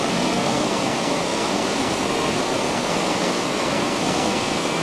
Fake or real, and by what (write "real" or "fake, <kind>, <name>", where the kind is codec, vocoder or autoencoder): fake, codec, SNAC